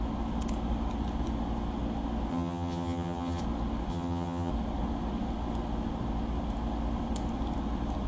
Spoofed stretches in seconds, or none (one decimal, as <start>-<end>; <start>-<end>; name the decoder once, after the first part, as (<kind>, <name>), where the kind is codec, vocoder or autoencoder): 2.3-3.4 (vocoder, HiFi-GAN); 3.9-4.5